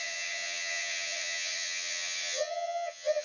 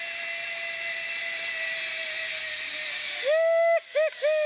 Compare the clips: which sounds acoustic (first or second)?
second